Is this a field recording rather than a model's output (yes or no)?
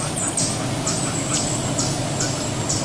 yes